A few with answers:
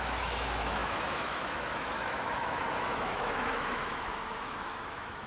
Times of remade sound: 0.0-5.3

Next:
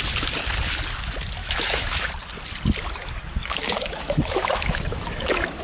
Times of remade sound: 1.4-2.1; 3.4-5.6

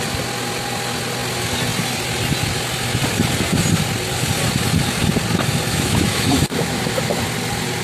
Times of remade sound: 5.7-7.2

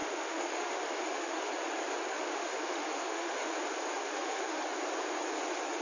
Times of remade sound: 0.0-1.5; 2.1-3.5; 4.0-4.6